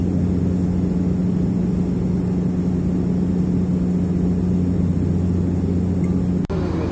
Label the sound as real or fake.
real